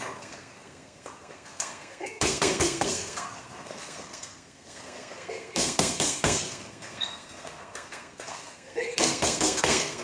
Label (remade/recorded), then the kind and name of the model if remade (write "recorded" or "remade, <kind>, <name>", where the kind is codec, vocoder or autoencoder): remade, codec, SNAC